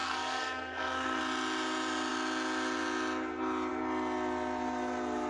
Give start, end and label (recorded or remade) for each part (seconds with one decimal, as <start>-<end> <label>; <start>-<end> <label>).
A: 0.0-1.2 remade; 1.2-5.3 recorded